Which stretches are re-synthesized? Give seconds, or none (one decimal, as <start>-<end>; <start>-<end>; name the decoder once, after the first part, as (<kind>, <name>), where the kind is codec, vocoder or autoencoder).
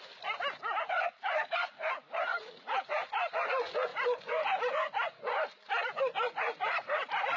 none